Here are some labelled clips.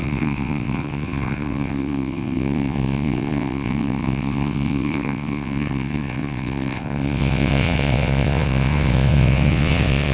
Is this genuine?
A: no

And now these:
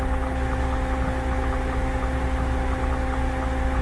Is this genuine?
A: yes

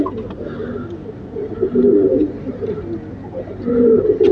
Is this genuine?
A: yes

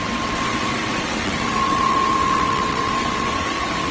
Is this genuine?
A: no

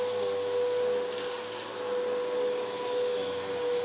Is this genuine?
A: yes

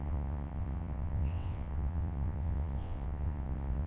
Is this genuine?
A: no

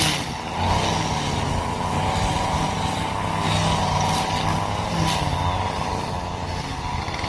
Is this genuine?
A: yes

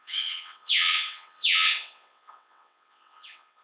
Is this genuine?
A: no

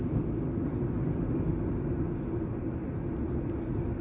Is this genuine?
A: yes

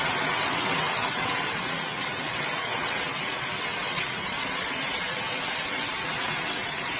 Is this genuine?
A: no